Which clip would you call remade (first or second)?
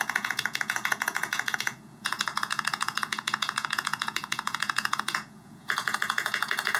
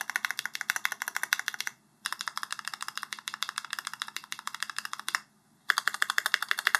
first